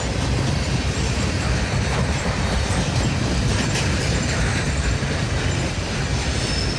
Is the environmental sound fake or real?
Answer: fake